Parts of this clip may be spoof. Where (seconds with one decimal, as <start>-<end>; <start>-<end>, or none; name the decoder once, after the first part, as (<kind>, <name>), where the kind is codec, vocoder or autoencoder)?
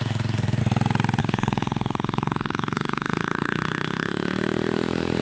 0.0-0.6 (autoencoder, DAC-VAE); 1.2-5.2